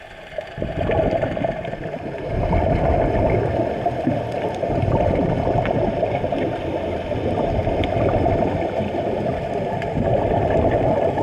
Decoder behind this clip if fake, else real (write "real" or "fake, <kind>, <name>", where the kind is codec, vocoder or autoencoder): real